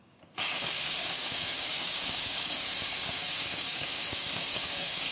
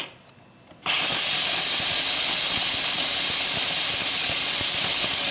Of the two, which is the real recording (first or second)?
second